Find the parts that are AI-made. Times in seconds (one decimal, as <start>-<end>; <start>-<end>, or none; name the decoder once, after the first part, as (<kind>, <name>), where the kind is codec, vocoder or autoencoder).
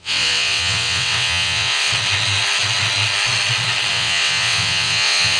0.0-1.9 (vocoder, WaveNeXt); 3.9-5.4